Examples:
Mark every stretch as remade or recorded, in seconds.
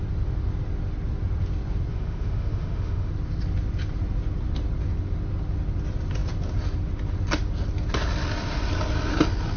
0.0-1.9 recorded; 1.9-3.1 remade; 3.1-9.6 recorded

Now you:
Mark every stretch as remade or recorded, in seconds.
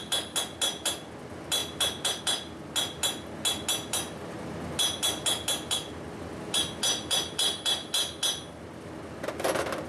0.0-9.9 recorded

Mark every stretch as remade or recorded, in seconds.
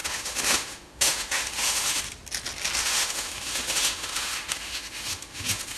0.0-2.0 remade; 2.0-2.8 recorded; 2.8-5.8 remade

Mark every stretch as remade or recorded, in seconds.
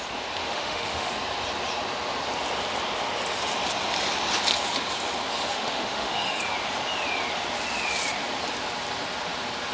0.0-0.4 recorded; 0.4-1.1 remade; 1.1-5.5 recorded; 5.5-6.4 remade; 6.4-9.7 recorded